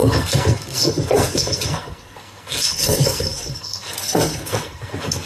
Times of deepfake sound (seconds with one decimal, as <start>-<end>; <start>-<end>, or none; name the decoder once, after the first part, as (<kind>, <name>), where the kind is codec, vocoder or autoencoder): 0.0-5.3 (codec, SNAC)